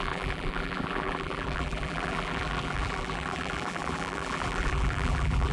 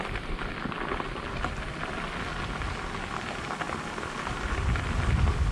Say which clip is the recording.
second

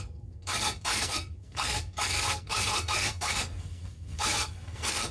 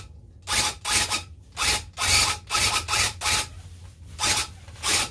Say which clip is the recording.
second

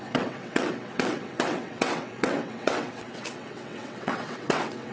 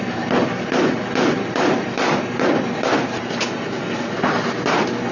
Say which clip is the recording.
second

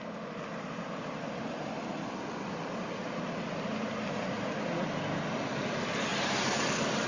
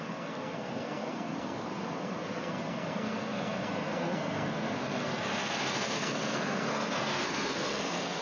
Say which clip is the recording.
first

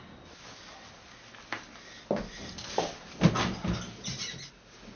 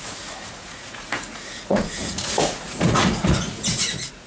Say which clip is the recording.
first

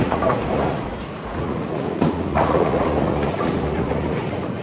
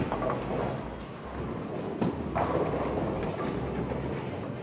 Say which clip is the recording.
second